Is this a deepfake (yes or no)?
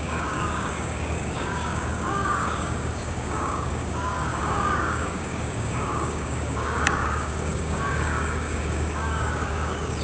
yes